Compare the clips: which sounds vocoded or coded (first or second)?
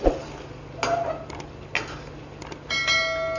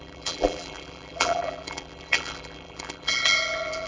second